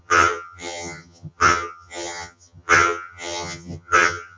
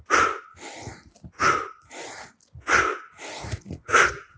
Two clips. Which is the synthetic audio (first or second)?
first